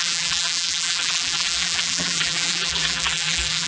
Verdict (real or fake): fake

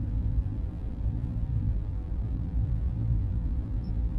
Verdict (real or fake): fake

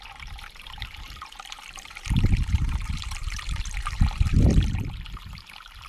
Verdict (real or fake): fake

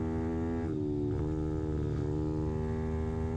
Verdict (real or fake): real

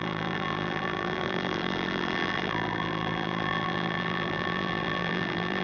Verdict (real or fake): fake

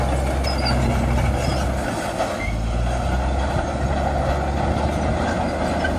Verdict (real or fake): real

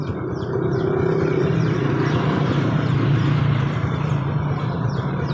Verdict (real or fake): fake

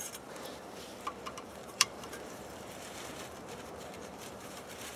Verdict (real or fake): fake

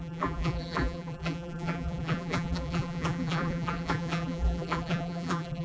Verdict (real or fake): fake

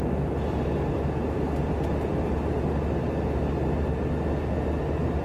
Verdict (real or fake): real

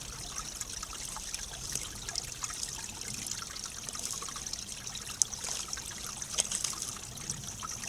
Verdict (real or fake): real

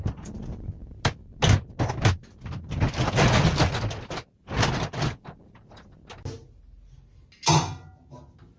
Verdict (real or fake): real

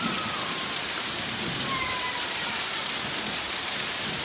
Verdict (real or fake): fake